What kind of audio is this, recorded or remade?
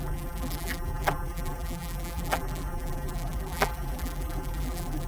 remade